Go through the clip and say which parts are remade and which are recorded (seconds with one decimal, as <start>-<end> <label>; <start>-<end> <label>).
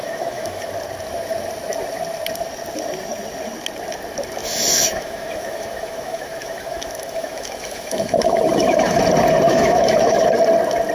0.0-0.7 remade; 0.7-4.4 recorded; 4.4-9.0 remade; 9.0-9.5 recorded; 9.5-10.3 remade; 10.3-10.9 recorded